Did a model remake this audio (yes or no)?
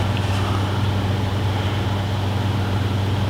no